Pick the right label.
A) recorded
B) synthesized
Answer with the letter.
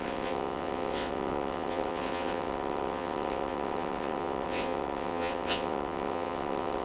B